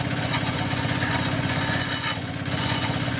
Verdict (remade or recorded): remade